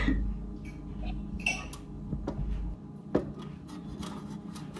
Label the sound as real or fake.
real